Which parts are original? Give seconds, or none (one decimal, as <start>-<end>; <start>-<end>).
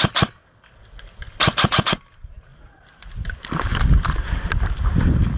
0.0-2.5